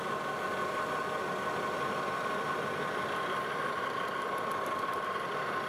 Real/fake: real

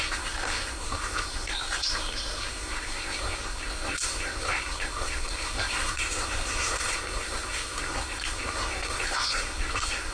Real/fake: fake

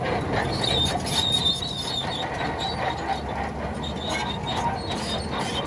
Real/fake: real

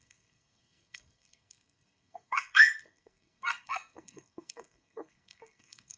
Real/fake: fake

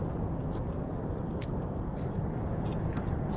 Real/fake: real